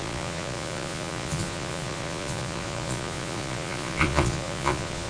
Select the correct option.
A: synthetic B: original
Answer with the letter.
A